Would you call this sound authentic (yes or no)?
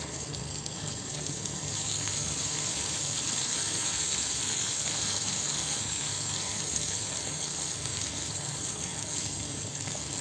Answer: no